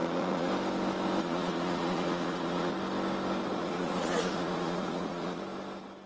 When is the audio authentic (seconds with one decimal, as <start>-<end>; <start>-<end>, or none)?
0.5-1.2; 2.7-3.6; 5.4-6.1

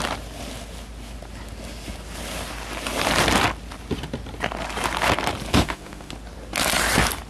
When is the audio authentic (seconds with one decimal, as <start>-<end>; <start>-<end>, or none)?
0.0-5.5; 6.1-7.3